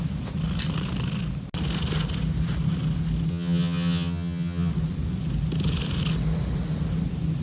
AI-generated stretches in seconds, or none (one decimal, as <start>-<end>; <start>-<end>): 3.3-4.7